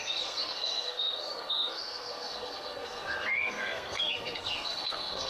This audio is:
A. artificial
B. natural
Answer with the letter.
A